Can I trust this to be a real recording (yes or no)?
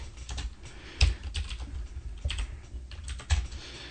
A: yes